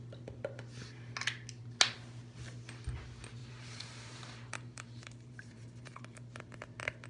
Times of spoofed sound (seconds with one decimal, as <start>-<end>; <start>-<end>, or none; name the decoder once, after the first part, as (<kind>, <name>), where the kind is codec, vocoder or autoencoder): 3.4-6.4 (vocoder, BigVGAN v2)